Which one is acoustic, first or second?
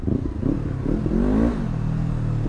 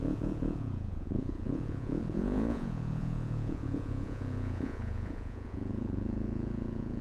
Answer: first